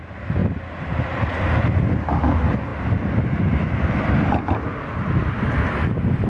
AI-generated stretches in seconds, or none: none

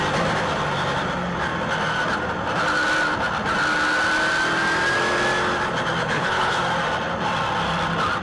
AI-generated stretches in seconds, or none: 6.0-6.6

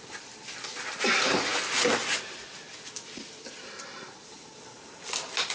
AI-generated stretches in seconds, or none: none

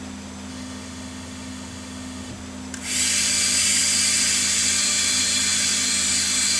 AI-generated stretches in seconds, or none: 0.5-2.3